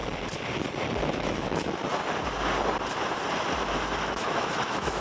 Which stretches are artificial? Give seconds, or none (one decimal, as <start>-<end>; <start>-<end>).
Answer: 1.0-1.8; 4.0-5.0